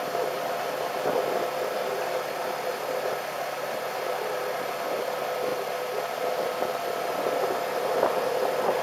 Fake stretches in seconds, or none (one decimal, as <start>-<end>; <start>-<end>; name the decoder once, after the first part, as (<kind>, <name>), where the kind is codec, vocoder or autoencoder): none